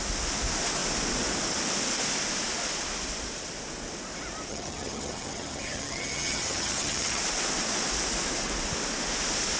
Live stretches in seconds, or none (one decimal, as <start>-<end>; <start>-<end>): 0.0-4.5; 7.2-9.6